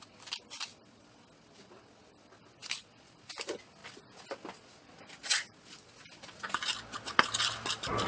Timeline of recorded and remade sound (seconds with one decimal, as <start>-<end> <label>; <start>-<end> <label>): 0.0-8.1 recorded